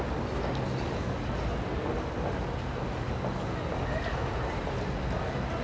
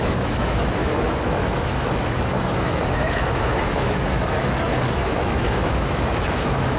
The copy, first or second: second